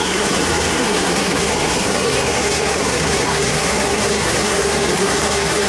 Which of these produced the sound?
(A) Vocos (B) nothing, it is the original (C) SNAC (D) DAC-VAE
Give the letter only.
C